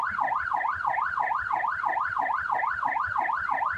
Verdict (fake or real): real